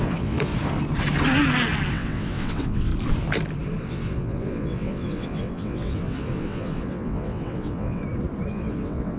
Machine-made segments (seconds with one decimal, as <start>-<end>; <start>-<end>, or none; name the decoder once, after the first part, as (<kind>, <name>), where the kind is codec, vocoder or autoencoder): 0.0-0.5 (vocoder, WaveNeXt); 1.9-2.9; 3.8-8.0; 8.5-9.2